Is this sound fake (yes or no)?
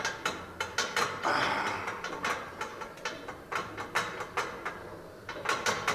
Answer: no